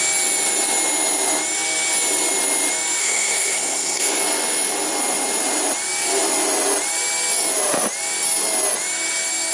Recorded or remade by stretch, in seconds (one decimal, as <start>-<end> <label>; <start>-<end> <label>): 0.0-3.0 recorded; 3.0-4.2 remade; 4.2-9.5 recorded